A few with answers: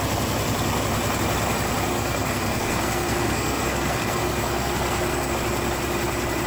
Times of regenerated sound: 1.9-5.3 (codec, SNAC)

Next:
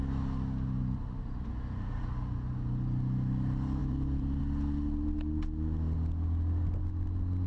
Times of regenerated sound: 3.8-4.4 (vocoder, BigVGAN v2)

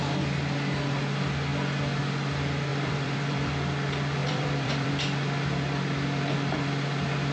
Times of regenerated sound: 2.7-3.5 (vocoder, BigVGAN v2); 4.2-4.9